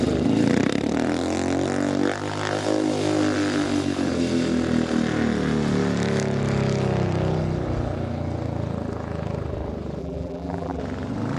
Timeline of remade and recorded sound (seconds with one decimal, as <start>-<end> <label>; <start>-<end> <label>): 0.0-10.0 recorded; 10.0-10.8 remade; 10.8-11.4 recorded